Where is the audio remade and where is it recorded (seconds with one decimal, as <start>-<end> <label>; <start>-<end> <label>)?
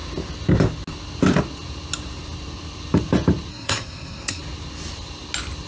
0.0-3.5 recorded; 3.5-4.4 remade; 4.4-5.7 recorded